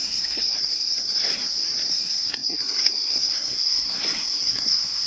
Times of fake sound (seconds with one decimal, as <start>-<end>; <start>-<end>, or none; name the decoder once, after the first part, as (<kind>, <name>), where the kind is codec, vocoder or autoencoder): 0.0-1.4 (codec, SNAC); 1.9-5.1